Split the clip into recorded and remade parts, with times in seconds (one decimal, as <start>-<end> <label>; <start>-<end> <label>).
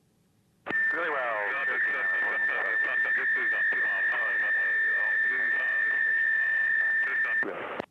0.0-2.4 recorded; 2.4-3.1 remade; 3.1-5.0 recorded; 5.0-6.8 remade; 6.8-7.9 recorded